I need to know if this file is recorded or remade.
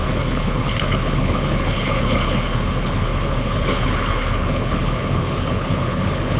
remade